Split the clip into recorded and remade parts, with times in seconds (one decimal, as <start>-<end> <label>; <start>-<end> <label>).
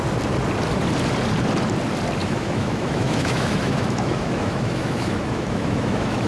0.0-2.2 recorded; 2.2-6.3 remade